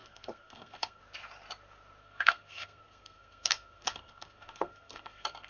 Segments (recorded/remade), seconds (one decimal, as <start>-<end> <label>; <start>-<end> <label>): 0.0-1.0 remade; 1.0-2.0 recorded; 2.0-5.5 remade